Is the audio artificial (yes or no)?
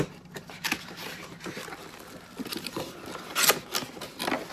no